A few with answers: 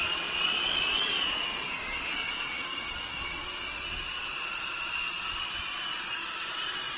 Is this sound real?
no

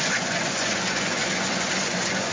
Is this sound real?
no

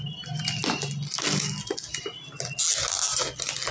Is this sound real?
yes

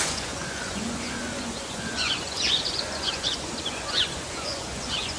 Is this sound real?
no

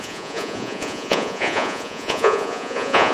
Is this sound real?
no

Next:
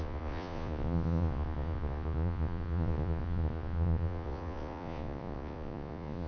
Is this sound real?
no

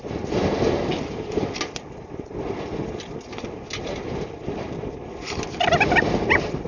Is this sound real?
yes